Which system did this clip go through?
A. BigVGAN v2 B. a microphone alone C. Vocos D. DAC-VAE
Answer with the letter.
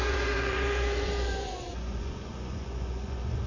C